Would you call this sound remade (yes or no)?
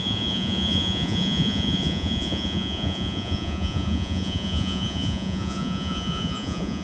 yes